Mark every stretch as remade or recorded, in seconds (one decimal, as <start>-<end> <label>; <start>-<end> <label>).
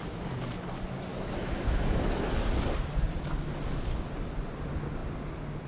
0.0-1.1 recorded; 1.1-2.3 remade; 2.3-5.7 recorded